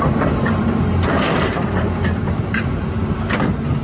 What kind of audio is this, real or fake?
fake